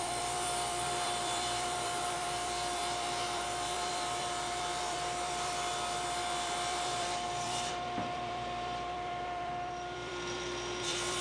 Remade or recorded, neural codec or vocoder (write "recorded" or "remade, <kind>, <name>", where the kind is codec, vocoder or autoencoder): remade, vocoder, BigVGAN v2